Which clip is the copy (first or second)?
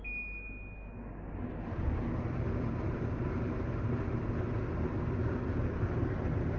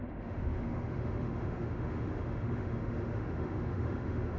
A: second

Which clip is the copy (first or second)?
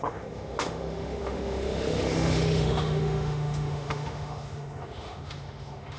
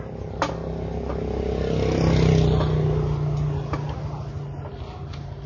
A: first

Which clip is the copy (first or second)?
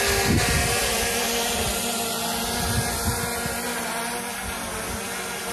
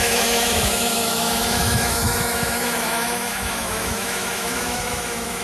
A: second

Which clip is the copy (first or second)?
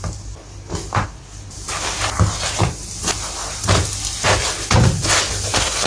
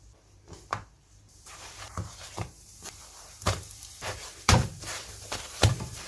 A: second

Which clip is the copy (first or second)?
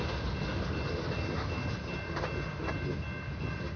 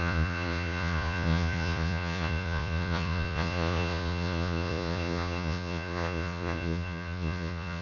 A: second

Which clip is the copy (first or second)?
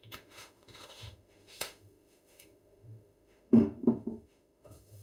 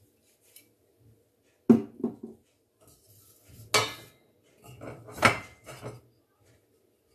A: first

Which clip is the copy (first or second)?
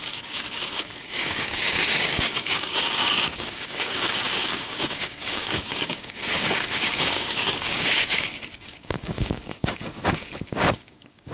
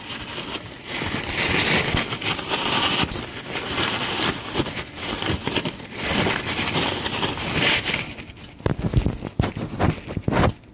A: first